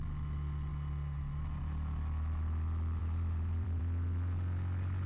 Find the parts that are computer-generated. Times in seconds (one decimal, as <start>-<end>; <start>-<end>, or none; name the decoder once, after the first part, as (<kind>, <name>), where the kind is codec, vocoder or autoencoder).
3.0-3.8 (vocoder, BigVGAN v2)